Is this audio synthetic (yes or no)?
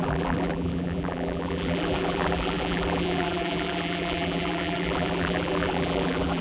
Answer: yes